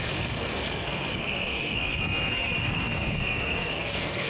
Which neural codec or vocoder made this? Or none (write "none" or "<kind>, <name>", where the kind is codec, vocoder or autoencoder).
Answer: codec, SNAC